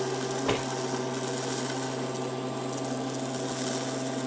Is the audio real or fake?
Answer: real